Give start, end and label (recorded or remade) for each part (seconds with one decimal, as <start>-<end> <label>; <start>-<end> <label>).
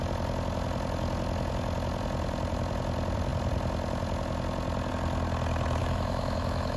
0.0-5.8 recorded; 5.8-6.8 remade